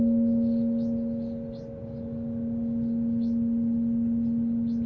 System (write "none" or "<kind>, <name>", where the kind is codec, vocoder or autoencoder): none